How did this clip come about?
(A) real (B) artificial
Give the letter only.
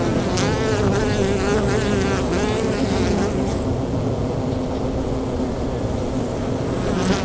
A